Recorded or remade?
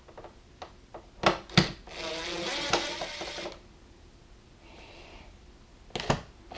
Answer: recorded